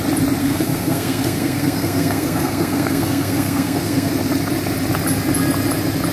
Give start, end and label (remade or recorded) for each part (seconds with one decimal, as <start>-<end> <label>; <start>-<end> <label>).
0.0-0.4 recorded; 0.4-4.1 remade; 4.1-6.1 recorded